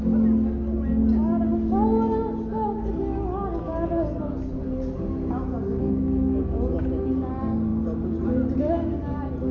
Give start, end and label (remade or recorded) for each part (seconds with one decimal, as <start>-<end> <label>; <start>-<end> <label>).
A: 0.0-5.7 recorded; 5.7-6.4 remade; 6.4-9.5 recorded